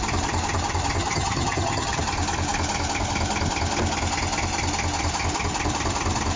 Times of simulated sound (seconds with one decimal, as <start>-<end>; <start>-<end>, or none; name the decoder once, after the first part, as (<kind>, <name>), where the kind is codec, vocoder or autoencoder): 1.0-2.0 (vocoder, HiFi-GAN)